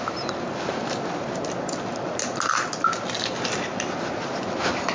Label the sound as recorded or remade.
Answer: recorded